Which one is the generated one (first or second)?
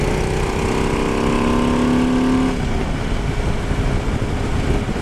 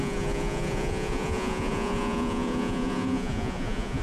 second